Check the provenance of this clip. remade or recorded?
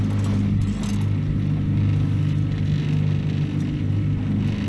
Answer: recorded